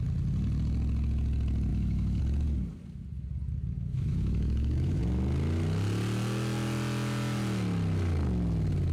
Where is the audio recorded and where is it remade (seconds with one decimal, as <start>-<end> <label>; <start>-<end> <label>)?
0.0-1.7 recorded; 1.7-2.2 remade; 2.2-3.9 recorded; 3.9-5.0 remade; 5.0-8.9 recorded